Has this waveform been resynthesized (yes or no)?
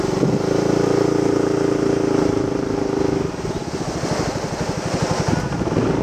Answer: no